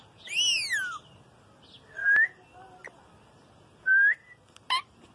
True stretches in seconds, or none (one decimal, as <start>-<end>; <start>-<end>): 0.0-5.1